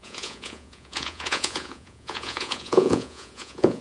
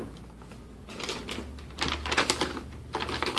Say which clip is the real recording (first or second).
second